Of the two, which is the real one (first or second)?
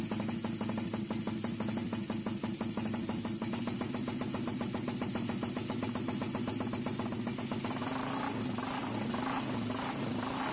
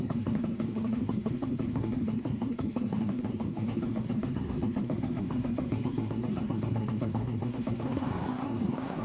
first